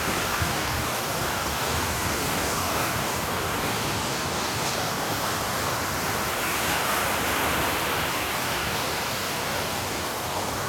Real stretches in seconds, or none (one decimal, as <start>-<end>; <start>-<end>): 5.7-6.3; 7.0-8.1